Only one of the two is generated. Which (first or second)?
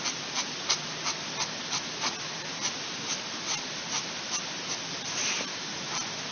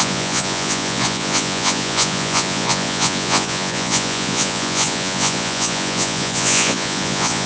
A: second